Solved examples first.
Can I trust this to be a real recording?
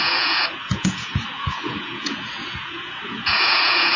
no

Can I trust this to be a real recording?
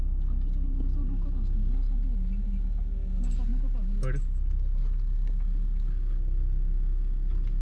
yes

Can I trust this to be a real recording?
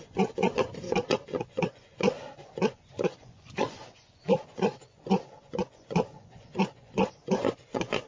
no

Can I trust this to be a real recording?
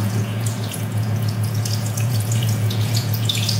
no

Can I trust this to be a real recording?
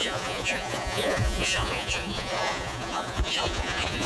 no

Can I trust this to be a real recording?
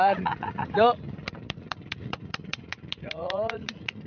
no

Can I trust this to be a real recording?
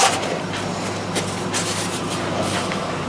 yes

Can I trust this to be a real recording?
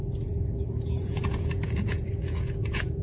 no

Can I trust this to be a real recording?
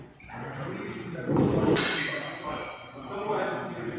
no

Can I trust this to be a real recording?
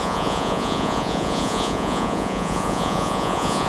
no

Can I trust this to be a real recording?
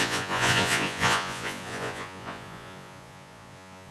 no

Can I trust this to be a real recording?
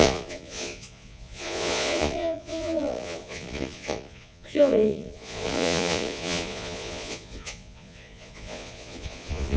no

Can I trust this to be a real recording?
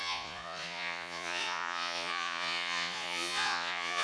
no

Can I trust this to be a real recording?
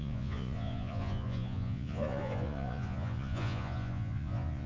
no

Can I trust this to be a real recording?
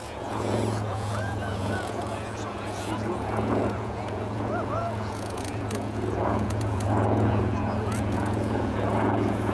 no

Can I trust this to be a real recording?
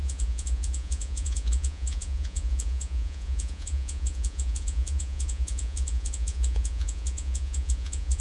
no